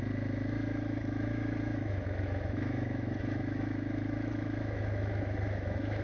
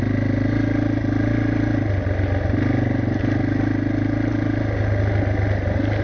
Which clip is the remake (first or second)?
first